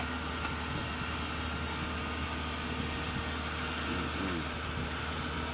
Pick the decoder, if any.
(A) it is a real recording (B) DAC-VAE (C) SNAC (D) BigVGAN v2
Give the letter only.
A